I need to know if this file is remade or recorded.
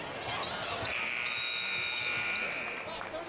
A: remade